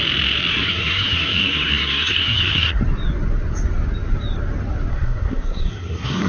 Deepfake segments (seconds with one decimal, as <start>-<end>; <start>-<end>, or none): 0.5-2.8; 4.9-6.3